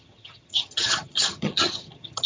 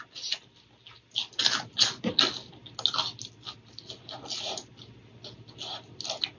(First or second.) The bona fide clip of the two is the second